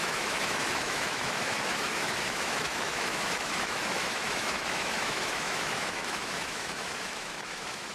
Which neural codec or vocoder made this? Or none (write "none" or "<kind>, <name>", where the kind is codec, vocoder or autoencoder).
autoencoder, DAC-VAE